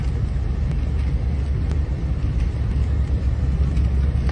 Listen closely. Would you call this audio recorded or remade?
recorded